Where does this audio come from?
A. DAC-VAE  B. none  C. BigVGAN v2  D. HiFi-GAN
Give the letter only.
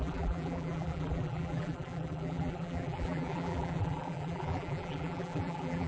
C